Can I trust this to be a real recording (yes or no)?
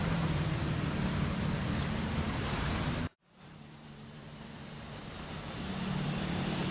no